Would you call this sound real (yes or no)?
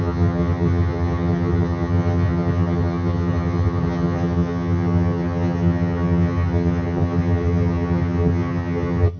no